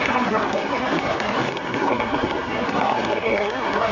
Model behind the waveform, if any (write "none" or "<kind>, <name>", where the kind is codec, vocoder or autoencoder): codec, SNAC